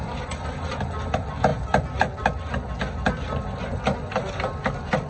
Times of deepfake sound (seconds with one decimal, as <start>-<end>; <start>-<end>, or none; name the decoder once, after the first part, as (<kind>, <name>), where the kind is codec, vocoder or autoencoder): none